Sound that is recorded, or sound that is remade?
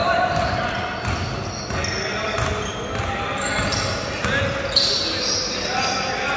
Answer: recorded